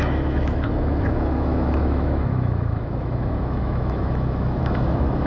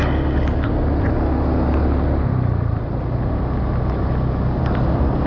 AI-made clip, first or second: first